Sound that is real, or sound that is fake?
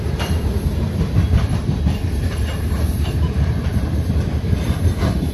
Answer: fake